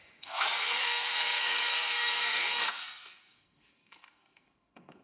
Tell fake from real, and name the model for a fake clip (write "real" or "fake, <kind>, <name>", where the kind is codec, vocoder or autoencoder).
fake, codec, SNAC